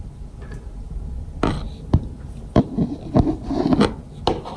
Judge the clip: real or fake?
real